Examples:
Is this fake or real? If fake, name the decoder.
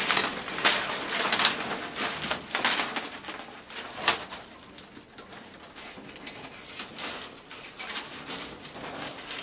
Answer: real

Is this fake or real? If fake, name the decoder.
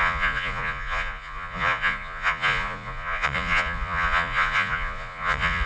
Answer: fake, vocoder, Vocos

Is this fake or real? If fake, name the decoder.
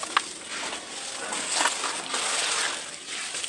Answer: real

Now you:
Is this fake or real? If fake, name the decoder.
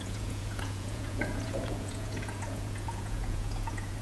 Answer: fake, vocoder, Vocos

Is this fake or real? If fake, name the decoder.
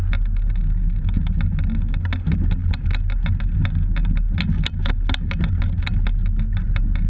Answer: real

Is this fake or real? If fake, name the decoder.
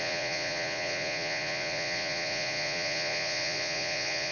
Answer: fake, vocoder, Vocos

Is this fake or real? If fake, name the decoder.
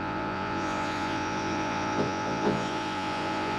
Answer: fake, vocoder, Vocos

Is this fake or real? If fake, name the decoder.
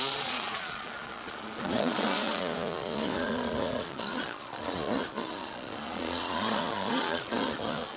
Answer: fake, vocoder, Vocos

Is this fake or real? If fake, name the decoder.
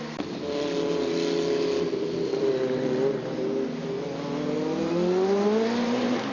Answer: real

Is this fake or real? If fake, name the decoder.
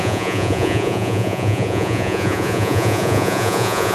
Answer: fake, vocoder, Vocos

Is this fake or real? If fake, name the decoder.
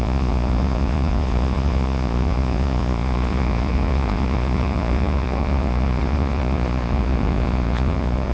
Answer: fake, vocoder, Vocos